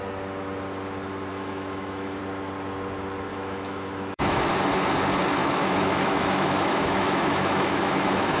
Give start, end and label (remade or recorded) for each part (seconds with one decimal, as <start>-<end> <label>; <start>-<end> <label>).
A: 0.0-1.3 recorded; 1.3-2.2 remade; 2.2-3.3 recorded; 3.3-4.5 remade; 4.5-5.4 recorded; 5.4-8.4 remade